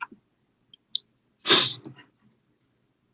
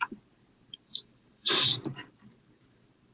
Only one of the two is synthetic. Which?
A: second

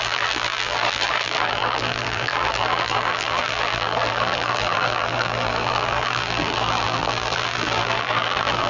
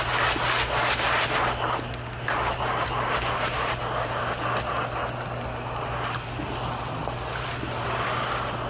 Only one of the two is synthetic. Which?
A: first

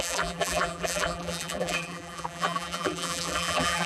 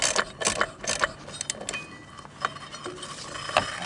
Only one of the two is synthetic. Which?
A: first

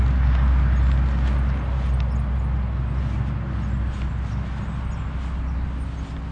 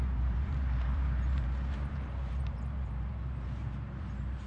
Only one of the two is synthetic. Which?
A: second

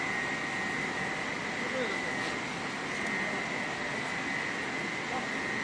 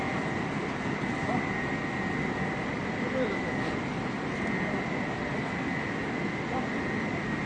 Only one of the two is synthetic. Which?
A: second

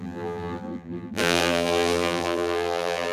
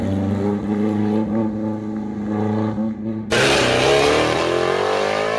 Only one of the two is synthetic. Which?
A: first